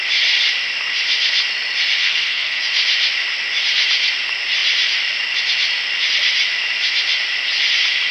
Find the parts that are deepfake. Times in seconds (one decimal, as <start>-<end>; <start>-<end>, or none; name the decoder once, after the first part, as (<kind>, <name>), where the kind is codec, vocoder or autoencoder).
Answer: 2.0-2.6 (codec, SNAC)